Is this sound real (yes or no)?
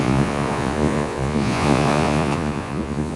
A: no